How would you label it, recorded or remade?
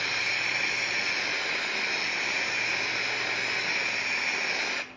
recorded